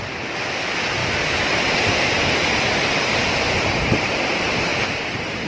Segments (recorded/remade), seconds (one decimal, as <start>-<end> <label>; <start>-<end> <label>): 0.0-5.5 recorded